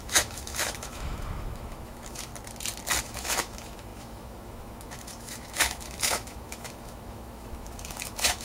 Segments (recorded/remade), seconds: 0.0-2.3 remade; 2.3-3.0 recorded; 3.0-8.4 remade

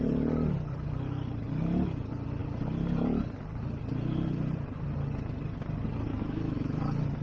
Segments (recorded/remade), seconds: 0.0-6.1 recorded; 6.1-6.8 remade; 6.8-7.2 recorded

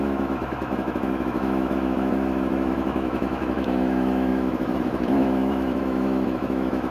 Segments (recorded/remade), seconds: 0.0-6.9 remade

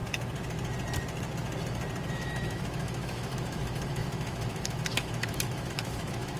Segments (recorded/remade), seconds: 0.0-2.1 recorded; 2.1-6.4 remade